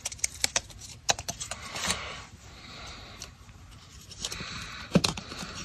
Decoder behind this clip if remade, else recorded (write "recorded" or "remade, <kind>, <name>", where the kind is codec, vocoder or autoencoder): remade, vocoder, BigVGAN v2